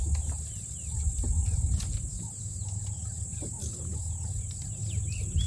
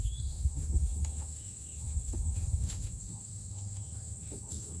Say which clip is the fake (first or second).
second